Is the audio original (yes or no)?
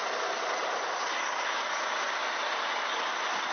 yes